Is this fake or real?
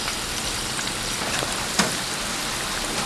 real